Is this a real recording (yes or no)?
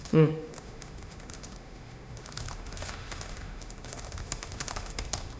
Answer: no